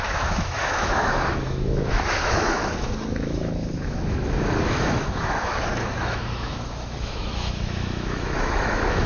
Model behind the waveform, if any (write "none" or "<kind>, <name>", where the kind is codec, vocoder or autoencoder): autoencoder, DAC-VAE